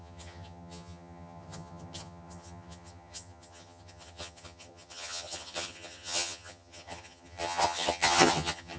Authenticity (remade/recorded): remade